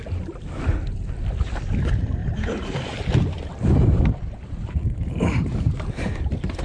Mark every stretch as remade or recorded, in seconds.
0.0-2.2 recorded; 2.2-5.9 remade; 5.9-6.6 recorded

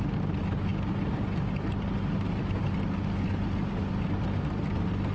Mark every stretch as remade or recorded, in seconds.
0.0-5.1 recorded

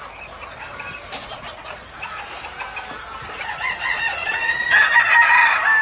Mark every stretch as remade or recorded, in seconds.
0.0-1.2 recorded; 1.2-2.4 remade; 2.4-3.9 recorded; 3.9-4.8 remade; 4.8-5.8 recorded

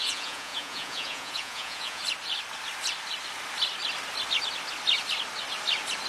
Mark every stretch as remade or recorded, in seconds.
0.0-2.0 remade; 2.0-6.1 recorded

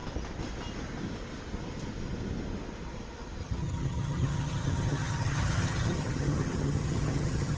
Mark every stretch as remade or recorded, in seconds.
0.0-3.4 recorded; 3.4-7.6 remade

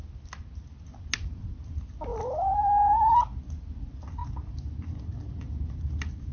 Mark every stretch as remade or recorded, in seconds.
0.0-6.3 recorded